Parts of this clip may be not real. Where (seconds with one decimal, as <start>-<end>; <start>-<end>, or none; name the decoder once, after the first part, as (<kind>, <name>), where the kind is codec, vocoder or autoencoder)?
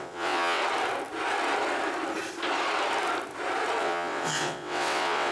0.0-0.6 (vocoder, WaveNeXt); 3.8-5.3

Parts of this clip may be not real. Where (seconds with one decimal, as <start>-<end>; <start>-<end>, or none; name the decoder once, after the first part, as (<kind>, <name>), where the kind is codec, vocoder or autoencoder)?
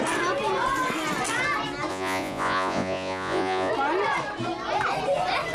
1.9-3.7 (vocoder, Vocos)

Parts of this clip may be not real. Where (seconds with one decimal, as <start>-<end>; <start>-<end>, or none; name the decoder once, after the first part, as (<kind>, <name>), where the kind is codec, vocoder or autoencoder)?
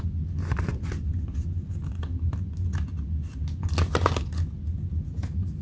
none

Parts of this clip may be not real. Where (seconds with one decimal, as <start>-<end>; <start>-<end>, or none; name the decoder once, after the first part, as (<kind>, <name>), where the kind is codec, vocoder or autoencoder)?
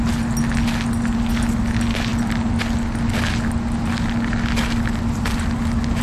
none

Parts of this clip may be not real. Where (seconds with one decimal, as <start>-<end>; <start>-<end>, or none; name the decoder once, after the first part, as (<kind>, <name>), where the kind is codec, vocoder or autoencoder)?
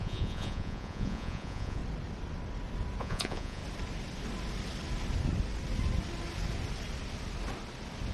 0.0-1.8 (vocoder, Vocos); 3.0-3.6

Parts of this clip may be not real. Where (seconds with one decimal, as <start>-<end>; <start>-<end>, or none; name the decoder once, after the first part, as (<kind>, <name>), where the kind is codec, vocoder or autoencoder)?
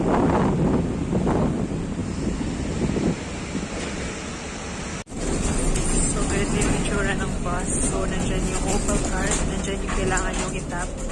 none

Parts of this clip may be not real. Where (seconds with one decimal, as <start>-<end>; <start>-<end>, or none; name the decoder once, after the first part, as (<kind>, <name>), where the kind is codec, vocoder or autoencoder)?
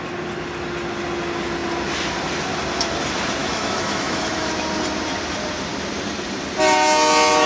3.4-4.5 (autoencoder, DAC-VAE)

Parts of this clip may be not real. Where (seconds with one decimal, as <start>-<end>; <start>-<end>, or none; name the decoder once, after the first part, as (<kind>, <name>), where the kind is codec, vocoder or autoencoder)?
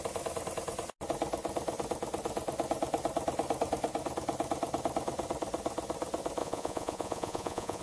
6.4-7.8 (vocoder, Vocos)